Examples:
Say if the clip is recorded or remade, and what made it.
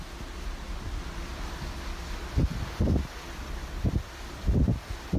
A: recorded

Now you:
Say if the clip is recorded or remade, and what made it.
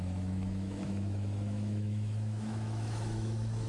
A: remade, autoencoder, DAC-VAE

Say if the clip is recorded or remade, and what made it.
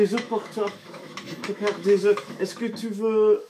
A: remade, autoencoder, DAC-VAE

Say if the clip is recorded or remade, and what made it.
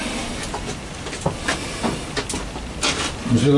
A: recorded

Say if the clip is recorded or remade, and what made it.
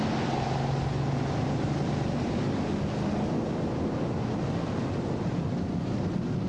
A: recorded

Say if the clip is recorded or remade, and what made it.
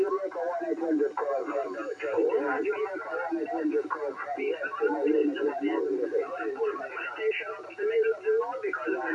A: recorded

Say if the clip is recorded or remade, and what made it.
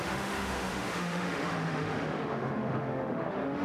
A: remade, autoencoder, DAC-VAE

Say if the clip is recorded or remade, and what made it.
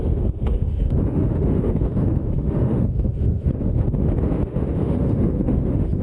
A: remade, autoencoder, DAC-VAE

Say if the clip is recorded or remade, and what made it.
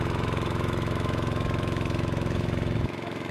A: remade, autoencoder, DAC-VAE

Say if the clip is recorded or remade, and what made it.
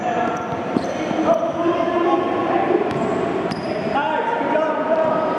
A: recorded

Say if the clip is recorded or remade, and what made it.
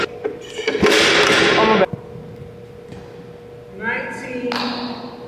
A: recorded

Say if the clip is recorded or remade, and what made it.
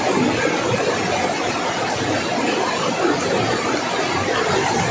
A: recorded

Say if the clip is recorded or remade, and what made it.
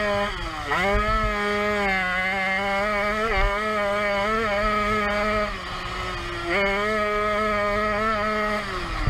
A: recorded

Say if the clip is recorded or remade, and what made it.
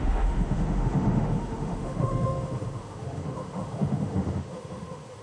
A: remade, autoencoder, DAC-VAE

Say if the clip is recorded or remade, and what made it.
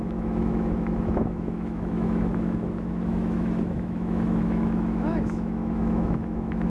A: remade, autoencoder, DAC-VAE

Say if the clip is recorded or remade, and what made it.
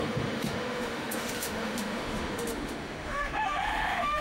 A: remade, autoencoder, DAC-VAE